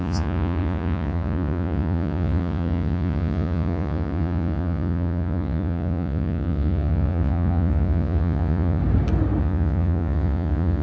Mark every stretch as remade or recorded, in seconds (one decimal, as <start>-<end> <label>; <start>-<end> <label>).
0.0-8.8 remade; 8.8-9.4 recorded; 9.4-10.8 remade